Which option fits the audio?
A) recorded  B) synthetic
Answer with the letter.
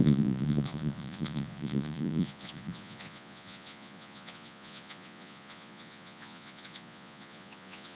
B